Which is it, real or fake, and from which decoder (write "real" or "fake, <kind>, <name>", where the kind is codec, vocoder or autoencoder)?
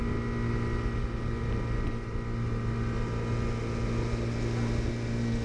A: real